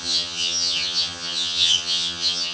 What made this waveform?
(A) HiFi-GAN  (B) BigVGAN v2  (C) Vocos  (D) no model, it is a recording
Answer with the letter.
A